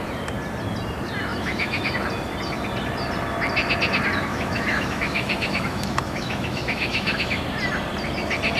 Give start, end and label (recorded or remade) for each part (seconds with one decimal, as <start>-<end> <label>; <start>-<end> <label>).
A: 0.0-1.3 recorded; 1.3-1.9 remade; 1.9-4.3 recorded; 4.3-7.4 remade; 7.4-8.6 recorded